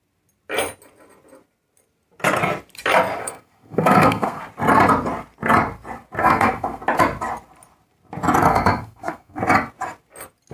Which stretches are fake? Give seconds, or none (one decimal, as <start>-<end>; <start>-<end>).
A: 3.2-4.4; 6.2-6.8; 8.5-9.4